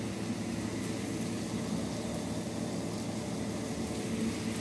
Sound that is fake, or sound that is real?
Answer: real